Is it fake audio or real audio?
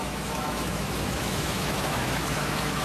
fake